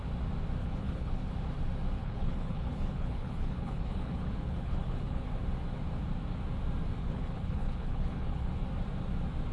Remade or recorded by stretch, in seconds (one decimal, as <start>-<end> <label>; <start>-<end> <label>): 0.0-0.6 recorded; 0.6-1.3 remade; 1.3-2.0 recorded; 2.0-5.3 remade; 5.3-7.0 recorded; 7.0-8.5 remade; 8.5-9.5 recorded